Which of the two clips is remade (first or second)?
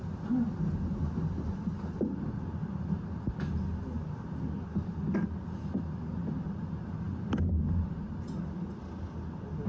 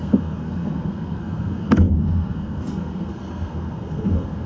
second